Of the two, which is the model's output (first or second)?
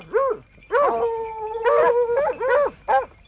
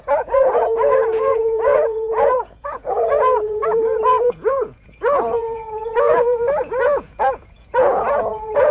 second